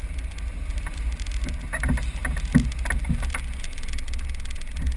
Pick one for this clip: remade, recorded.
recorded